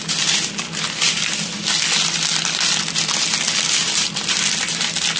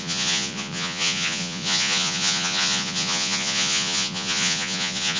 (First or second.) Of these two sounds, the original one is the first